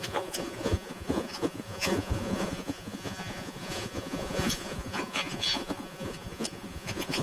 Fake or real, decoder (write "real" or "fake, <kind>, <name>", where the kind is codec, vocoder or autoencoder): fake, vocoder, Vocos